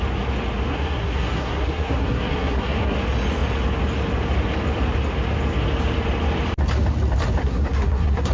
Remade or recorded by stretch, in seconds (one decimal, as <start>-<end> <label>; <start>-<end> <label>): 0.0-0.7 recorded; 0.7-3.0 remade; 3.0-7.4 recorded; 7.4-8.3 remade